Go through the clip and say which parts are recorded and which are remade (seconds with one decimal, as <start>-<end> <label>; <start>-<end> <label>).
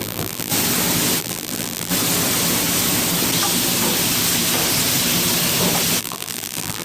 0.0-0.5 remade; 0.5-1.2 recorded; 1.2-1.9 remade; 1.9-6.0 recorded; 6.0-6.8 remade